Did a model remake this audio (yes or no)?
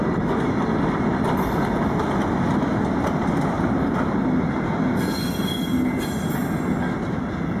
no